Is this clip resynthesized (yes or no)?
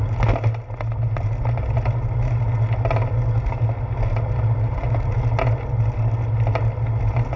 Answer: no